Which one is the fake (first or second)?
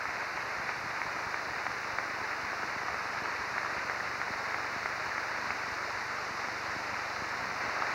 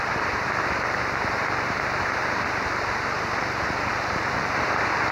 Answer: second